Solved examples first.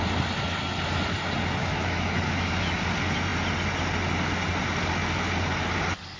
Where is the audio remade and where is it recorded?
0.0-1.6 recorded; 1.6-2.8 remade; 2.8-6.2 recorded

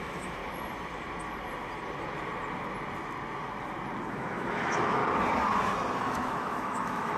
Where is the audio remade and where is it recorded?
0.0-0.4 remade; 0.4-4.1 recorded; 4.1-5.0 remade; 5.0-6.0 recorded; 6.0-7.2 remade

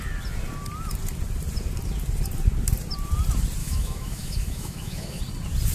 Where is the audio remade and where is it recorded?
0.0-3.6 recorded; 3.6-5.2 remade; 5.2-5.7 recorded

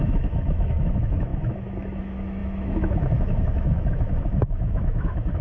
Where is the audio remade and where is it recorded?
0.0-5.4 remade

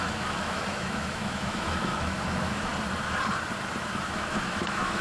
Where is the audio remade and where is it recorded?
0.0-2.7 remade; 2.7-3.8 recorded; 3.8-5.0 remade

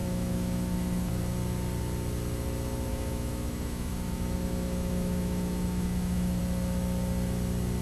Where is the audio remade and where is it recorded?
0.0-1.2 remade; 1.2-2.9 recorded; 2.9-6.4 remade; 6.4-7.8 recorded

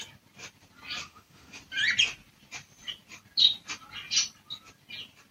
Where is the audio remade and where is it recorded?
0.0-1.0 recorded; 1.0-1.6 remade; 1.6-5.3 recorded

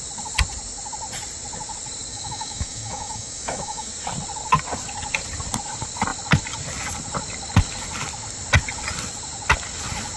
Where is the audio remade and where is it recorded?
0.0-2.1 recorded; 2.1-3.9 remade; 3.9-10.2 recorded